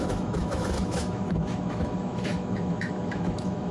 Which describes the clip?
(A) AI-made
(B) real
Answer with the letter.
A